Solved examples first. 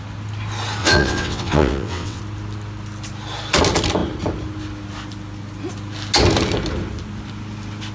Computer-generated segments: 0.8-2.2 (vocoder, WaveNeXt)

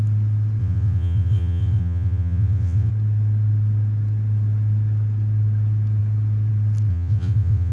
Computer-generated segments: 0.6-2.9 (vocoder, WaveNeXt); 6.9-7.7

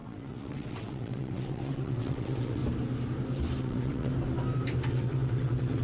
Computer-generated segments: 0.0-2.6 (vocoder, WaveNeXt); 3.6-4.1; 4.9-5.8

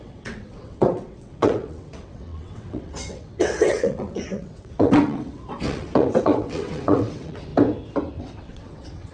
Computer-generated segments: 0.0-7.5 (vocoder, WaveNeXt); 8.2-9.1

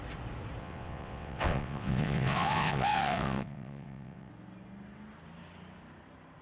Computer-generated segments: 0.6-4.3 (vocoder, WaveNeXt)

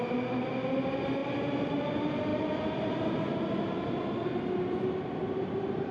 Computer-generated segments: none

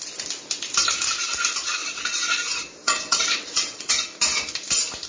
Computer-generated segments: 1.8-2.3 (vocoder, WaveNeXt); 2.8-3.9